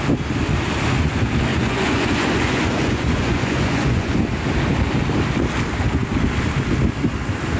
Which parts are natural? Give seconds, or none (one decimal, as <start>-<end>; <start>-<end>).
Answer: 0.0-1.5; 4.1-7.6